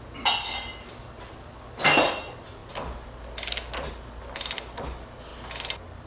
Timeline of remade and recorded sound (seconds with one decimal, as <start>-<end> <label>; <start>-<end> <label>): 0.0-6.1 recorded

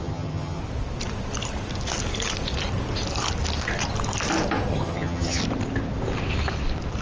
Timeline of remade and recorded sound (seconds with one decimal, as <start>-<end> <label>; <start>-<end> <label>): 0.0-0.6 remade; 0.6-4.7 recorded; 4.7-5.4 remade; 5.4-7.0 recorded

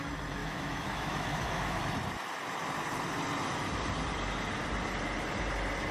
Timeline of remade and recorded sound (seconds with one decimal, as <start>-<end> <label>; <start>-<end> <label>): 0.0-0.4 recorded; 0.4-1.8 remade; 1.8-5.9 recorded

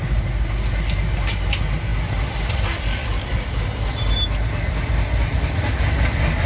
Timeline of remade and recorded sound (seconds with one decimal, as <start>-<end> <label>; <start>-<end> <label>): 0.0-6.5 recorded

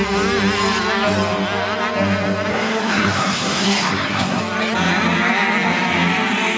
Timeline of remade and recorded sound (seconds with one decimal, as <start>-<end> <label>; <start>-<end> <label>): 0.0-2.5 recorded; 2.5-4.4 remade; 4.4-6.6 recorded

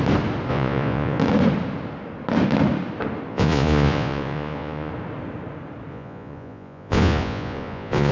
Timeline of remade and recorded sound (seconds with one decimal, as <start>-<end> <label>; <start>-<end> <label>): 0.0-0.5 recorded; 0.5-1.2 remade; 1.2-3.3 recorded; 3.3-4.9 remade; 4.9-5.9 recorded; 5.9-8.1 remade

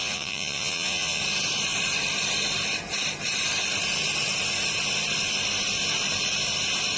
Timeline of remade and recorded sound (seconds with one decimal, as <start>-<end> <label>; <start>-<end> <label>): 0.0-1.2 remade; 1.2-7.0 recorded